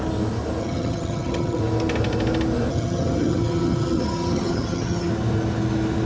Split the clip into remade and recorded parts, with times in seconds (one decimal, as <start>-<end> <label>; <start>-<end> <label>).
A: 0.0-0.6 recorded; 0.6-1.6 remade; 1.6-2.7 recorded; 2.7-5.1 remade; 5.1-6.0 recorded

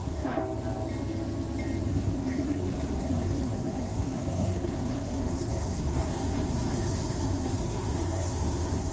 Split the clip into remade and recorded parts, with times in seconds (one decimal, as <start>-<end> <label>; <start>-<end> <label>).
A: 0.0-0.4 remade; 0.4-1.9 recorded; 1.9-8.9 remade

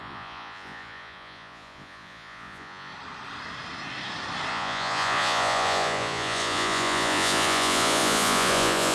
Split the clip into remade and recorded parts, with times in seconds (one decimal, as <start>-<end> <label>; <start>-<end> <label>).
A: 0.0-2.9 remade; 2.9-4.5 recorded; 4.5-8.9 remade

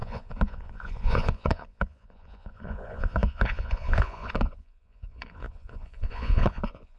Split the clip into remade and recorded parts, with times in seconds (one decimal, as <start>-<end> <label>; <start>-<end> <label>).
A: 0.0-7.0 remade

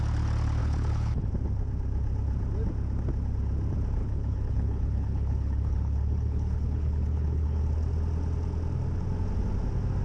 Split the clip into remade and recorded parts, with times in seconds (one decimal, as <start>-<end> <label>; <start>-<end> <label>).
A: 0.0-0.6 recorded; 0.6-1.3 remade; 1.3-4.0 recorded; 4.0-7.7 remade; 7.7-10.0 recorded

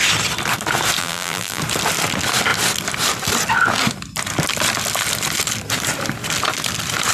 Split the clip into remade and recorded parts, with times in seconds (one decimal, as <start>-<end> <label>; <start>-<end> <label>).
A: 0.0-1.0 recorded; 1.0-1.6 remade; 1.6-7.1 recorded